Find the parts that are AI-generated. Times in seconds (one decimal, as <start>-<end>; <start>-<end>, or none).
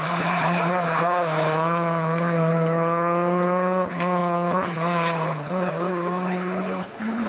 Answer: 0.0-7.3